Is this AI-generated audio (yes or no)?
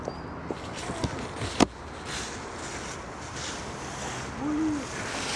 no